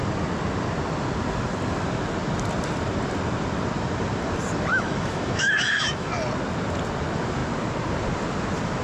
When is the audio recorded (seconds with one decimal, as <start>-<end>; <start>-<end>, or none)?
0.0-4.7; 6.1-8.8